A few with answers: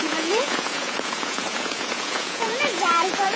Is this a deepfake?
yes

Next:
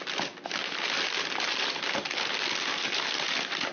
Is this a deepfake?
no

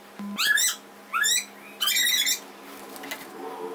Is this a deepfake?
no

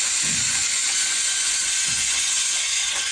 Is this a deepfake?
yes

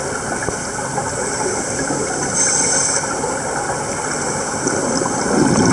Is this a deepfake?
no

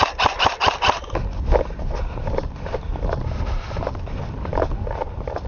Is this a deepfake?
no